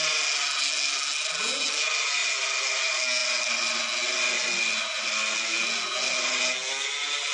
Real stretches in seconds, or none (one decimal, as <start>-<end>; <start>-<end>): 0.0-7.3